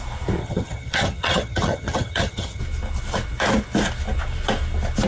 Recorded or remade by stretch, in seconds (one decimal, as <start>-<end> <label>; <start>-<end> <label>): 0.0-0.4 recorded; 0.4-2.6 remade; 2.6-5.1 recorded